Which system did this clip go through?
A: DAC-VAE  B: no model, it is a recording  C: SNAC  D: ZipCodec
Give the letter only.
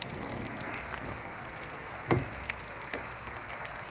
C